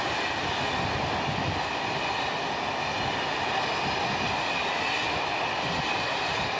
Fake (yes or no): no